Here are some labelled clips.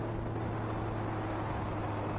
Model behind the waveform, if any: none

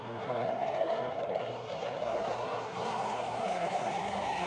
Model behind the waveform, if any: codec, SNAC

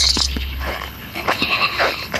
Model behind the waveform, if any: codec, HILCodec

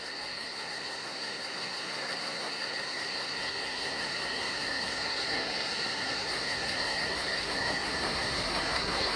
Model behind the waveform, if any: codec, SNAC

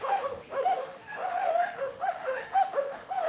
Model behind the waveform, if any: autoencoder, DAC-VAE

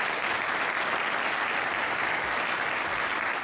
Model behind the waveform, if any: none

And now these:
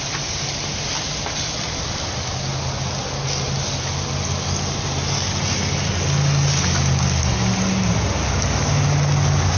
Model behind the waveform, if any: none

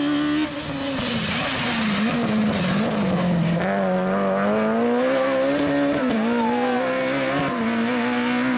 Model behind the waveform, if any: none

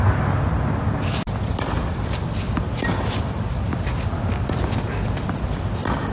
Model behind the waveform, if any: none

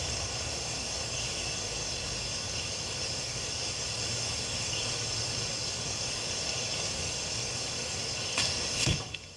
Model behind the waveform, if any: codec, DAC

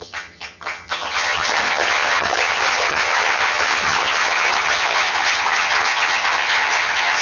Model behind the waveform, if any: vocoder, HiFi-GAN